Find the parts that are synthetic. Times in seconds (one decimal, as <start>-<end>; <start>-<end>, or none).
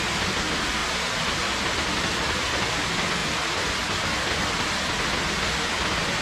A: none